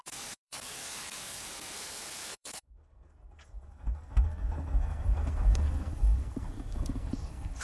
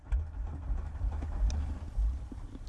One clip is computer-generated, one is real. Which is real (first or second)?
second